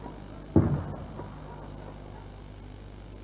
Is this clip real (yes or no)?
yes